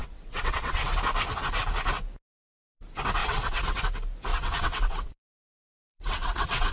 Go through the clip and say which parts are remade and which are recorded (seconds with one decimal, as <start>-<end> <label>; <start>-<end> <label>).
0.0-1.0 remade; 1.0-3.2 recorded; 3.2-3.8 remade; 3.8-4.3 recorded; 4.3-6.7 remade